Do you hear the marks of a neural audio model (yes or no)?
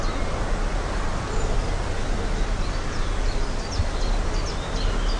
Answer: no